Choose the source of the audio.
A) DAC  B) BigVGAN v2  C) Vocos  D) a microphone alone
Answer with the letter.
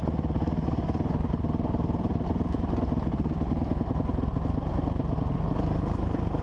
D